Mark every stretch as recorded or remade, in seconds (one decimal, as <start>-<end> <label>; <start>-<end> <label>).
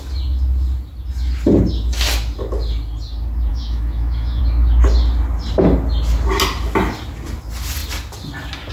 0.0-3.5 recorded; 3.5-4.4 remade; 4.4-8.7 recorded